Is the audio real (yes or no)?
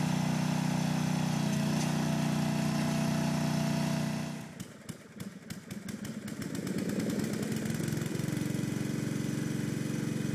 yes